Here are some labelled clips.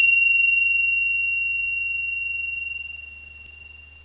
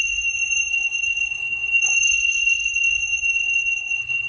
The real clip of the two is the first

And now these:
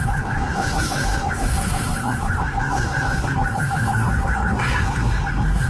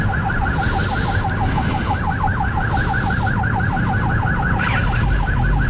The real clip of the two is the second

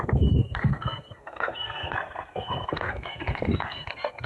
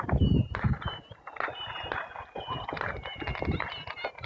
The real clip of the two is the second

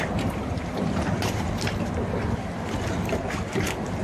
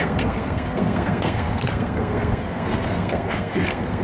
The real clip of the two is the first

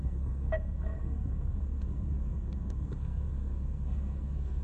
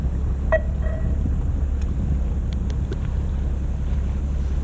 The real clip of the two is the second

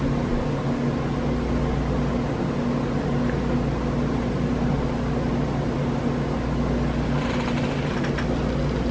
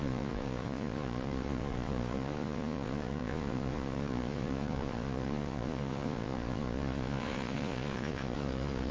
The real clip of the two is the first